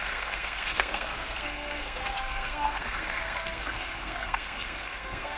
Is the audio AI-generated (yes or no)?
yes